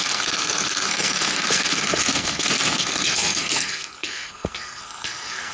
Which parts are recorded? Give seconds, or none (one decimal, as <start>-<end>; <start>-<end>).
none